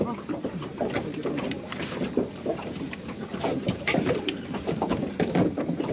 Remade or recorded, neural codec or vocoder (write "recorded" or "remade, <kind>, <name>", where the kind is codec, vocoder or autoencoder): remade, vocoder, BigVGAN v2